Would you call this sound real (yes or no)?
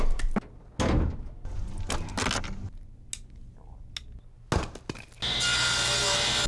yes